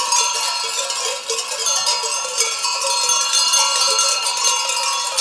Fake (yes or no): yes